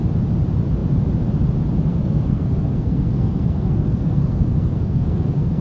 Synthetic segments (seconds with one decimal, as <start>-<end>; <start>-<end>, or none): 1.9-5.6